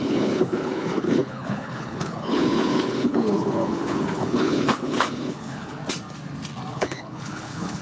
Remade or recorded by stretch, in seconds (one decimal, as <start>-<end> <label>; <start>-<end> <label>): 0.0-5.8 remade; 5.8-6.7 recorded; 6.7-7.8 remade